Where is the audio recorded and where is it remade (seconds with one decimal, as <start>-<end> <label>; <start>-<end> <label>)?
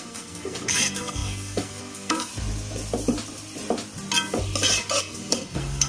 0.0-2.3 remade; 2.3-5.0 recorded; 5.0-5.9 remade